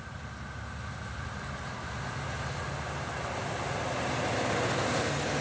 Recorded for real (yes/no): yes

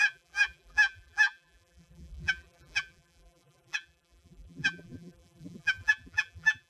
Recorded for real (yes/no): no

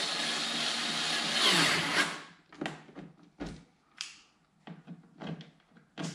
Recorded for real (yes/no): yes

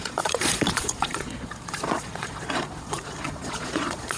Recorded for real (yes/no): no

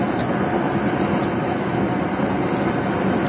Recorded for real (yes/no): yes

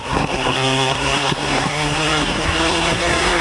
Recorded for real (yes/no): no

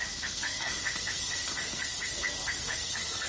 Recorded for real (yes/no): no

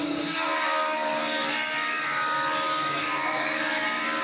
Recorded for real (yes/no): no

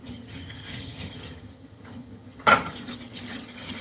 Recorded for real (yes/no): no